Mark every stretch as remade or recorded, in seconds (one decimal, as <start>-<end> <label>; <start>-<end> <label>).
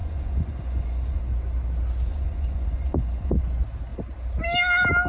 0.0-1.2 remade; 1.2-2.1 recorded; 2.1-3.4 remade; 3.4-5.1 recorded